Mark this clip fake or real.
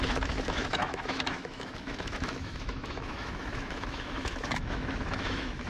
fake